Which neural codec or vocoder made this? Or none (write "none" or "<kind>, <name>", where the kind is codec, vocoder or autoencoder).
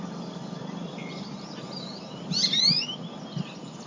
none